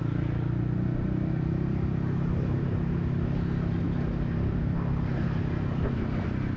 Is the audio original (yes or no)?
yes